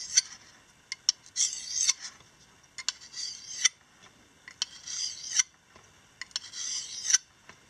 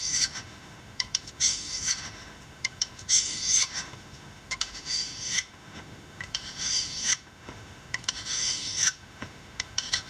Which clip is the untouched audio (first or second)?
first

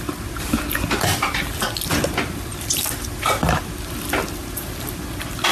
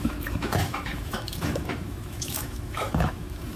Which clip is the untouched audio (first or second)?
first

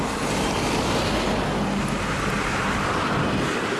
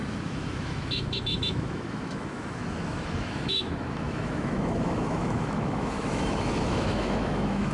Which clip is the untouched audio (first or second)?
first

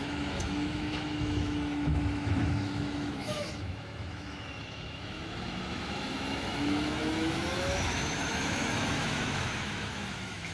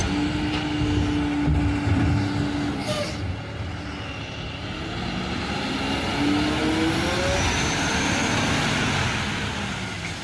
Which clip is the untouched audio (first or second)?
second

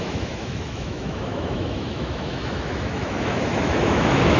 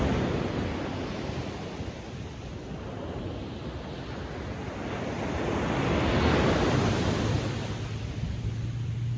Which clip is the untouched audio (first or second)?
second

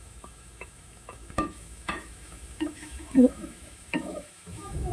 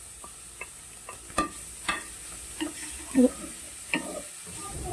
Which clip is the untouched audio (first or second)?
second